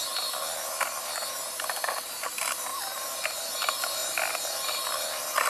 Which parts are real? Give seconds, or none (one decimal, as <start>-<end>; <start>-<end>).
0.0-1.8; 2.3-2.7; 3.2-5.5